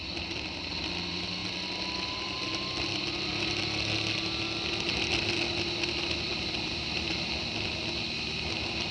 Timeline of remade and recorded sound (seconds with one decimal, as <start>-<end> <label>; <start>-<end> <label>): 0.0-8.9 recorded